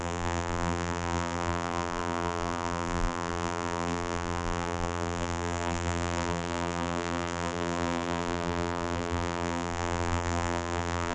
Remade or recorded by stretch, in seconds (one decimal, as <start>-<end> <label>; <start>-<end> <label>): 0.0-11.1 remade